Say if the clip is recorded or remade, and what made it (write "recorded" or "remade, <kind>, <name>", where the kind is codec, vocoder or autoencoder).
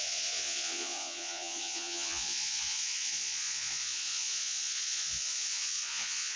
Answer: remade, vocoder, Vocos